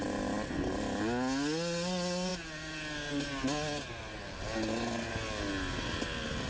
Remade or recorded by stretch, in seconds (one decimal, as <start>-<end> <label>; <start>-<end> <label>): 0.0-6.5 recorded